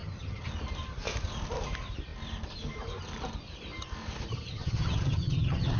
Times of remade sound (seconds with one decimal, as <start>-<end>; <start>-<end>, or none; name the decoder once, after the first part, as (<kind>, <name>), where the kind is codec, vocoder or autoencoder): 0.0-0.5 (vocoder, HiFi-GAN); 4.3-5.8

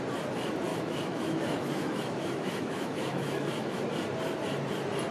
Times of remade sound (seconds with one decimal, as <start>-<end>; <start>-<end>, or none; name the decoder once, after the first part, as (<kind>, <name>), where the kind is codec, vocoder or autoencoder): 0.7-3.8 (autoencoder, DAC-VAE)

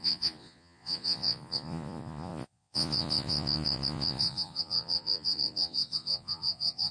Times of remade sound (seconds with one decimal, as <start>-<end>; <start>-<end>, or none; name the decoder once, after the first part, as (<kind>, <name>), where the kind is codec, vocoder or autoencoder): 0.0-6.9 (vocoder, Vocos)

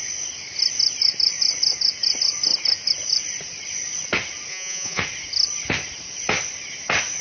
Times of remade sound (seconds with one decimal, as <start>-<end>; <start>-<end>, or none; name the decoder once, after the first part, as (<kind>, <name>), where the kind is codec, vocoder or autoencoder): 4.5-5.0 (vocoder, Vocos)

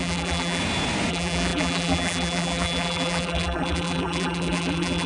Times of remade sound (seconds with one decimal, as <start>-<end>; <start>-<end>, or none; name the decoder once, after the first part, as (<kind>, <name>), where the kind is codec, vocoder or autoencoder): 0.0-0.6 (vocoder, BigVGAN v2); 1.1-5.1

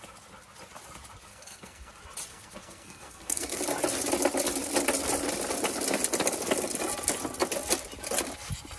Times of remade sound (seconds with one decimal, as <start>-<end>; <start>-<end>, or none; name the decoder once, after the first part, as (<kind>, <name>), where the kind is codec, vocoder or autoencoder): 1.3-1.9 (codec, SNAC); 2.3-3.6

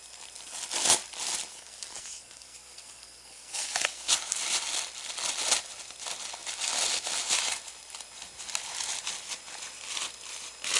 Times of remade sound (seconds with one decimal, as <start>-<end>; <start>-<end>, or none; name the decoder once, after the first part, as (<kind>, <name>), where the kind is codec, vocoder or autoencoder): 1.5-4.4 (codec, SNAC)